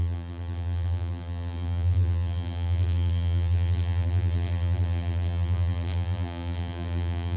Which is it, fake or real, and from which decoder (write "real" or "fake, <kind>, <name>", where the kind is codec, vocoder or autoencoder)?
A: fake, vocoder, BigVGAN v2